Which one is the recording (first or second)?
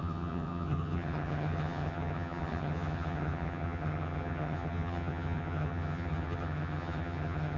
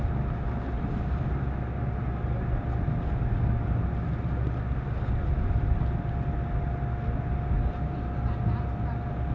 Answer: second